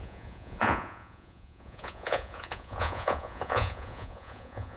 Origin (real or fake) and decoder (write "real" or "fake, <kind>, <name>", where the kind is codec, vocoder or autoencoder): fake, vocoder, Vocos